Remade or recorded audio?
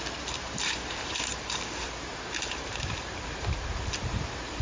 remade